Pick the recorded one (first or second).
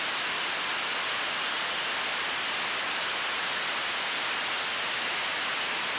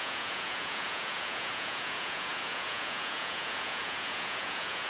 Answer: first